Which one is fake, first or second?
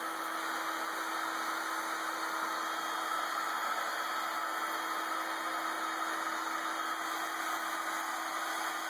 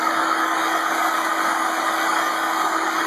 second